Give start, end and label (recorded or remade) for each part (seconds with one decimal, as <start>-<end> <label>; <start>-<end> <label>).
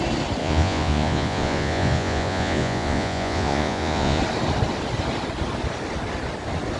0.0-0.4 recorded; 0.4-4.2 remade; 4.2-6.8 recorded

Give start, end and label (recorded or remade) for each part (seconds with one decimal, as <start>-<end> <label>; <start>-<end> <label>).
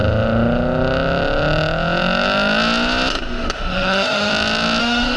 0.0-3.1 recorded; 3.1-4.3 remade; 4.3-4.8 recorded; 4.8-5.2 remade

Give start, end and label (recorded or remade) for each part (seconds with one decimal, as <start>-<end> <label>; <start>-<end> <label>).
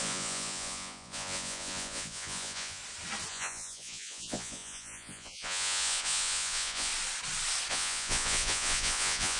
0.0-2.8 remade; 2.8-3.3 recorded; 3.3-6.9 remade; 6.9-7.7 recorded; 7.7-9.4 remade